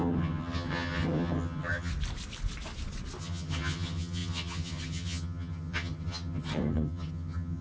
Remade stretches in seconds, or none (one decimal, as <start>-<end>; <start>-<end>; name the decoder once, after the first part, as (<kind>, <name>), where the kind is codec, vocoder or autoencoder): 0.0-1.9 (vocoder, HiFi-GAN); 3.2-7.6